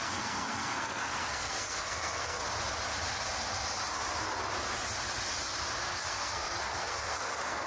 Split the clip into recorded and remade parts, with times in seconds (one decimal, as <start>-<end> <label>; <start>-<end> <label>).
0.0-2.4 remade; 2.4-6.0 recorded; 6.0-7.7 remade